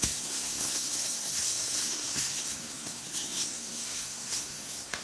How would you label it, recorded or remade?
remade